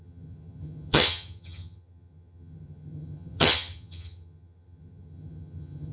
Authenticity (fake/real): fake